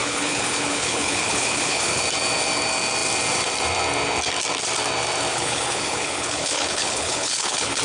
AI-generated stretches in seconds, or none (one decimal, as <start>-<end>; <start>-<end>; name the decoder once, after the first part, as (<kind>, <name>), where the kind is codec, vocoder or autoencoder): 0.0-2.0 (codec, HILCodec); 5.3-7.8